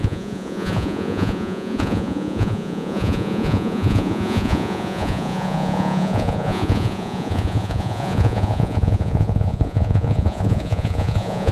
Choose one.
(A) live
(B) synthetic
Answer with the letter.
B